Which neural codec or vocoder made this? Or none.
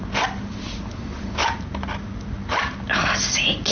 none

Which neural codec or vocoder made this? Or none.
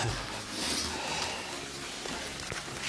none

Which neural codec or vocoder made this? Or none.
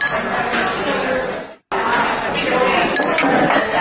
none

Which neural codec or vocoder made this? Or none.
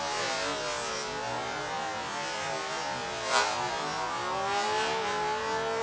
none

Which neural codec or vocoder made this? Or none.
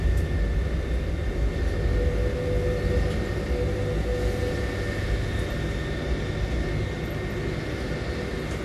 none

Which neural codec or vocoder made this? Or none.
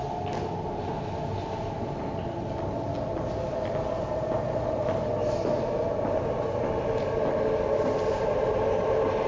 none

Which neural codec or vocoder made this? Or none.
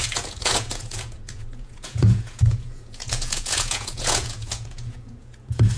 vocoder, Vocos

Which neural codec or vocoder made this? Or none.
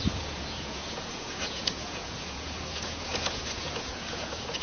vocoder, Vocos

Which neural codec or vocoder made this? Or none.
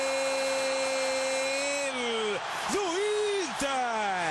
none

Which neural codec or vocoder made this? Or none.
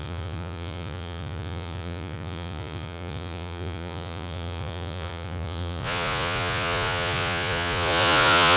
vocoder, Vocos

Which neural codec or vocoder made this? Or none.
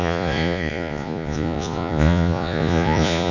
vocoder, Vocos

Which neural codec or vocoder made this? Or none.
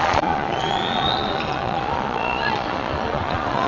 vocoder, Vocos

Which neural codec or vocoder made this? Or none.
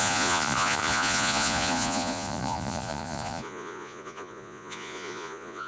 vocoder, Vocos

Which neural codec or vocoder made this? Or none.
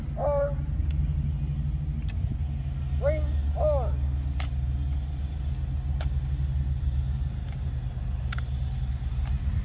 none